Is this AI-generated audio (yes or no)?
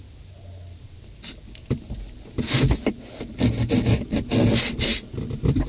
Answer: no